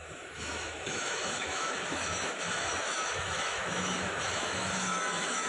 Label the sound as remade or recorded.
remade